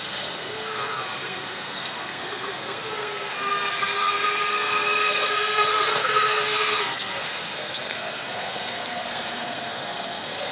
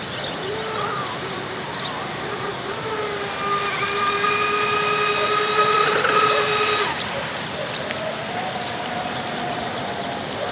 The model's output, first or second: first